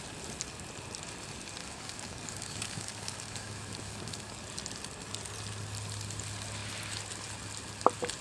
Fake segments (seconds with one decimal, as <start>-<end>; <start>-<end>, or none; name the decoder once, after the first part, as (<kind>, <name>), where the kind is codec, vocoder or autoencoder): 1.6-4.4 (codec, DAC)